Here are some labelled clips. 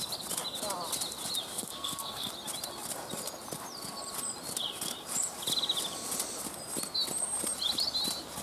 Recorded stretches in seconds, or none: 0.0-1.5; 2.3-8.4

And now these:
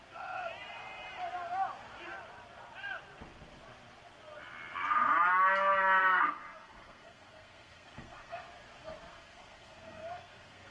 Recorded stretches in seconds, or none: 0.0-6.0; 8.4-9.1